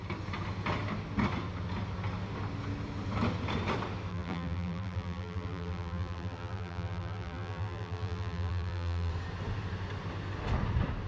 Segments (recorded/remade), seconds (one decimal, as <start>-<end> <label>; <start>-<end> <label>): 0.0-4.1 recorded; 4.1-9.1 remade; 9.1-11.1 recorded